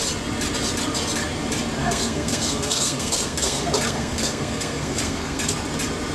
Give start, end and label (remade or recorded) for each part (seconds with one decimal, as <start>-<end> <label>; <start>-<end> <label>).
0.0-1.8 recorded; 1.8-5.5 remade; 5.5-6.1 recorded